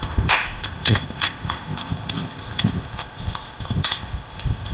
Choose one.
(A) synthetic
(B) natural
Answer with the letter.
A